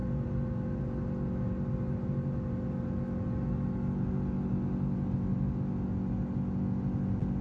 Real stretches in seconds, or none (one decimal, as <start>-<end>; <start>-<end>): 0.0-7.4